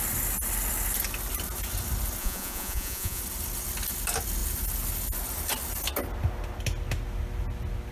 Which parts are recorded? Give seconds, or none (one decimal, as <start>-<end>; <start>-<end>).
0.0-2.2; 3.2-7.9